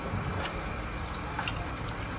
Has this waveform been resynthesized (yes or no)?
no